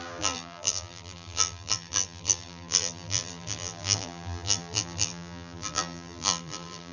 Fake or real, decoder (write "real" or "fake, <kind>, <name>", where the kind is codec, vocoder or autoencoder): fake, vocoder, BigVGAN v2